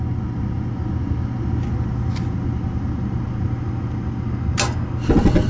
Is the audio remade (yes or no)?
no